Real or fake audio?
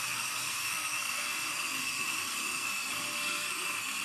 fake